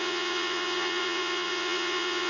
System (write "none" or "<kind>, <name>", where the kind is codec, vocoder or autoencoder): vocoder, Vocos